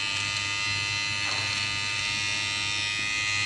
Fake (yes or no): no